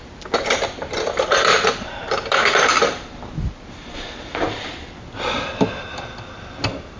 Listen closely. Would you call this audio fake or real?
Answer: real